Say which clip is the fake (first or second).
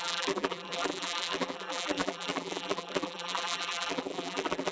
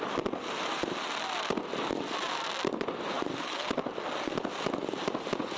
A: first